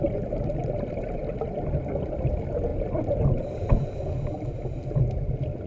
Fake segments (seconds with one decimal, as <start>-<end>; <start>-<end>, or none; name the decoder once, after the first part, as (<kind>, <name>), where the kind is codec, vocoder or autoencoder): none